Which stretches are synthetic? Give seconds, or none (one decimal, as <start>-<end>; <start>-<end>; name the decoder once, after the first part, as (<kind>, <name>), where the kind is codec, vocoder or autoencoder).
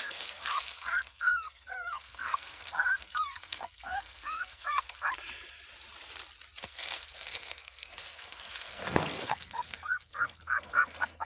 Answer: 0.0-5.1 (codec, SNAC); 6.6-11.3